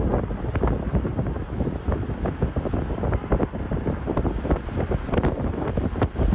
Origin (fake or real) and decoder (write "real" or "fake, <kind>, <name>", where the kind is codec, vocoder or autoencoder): real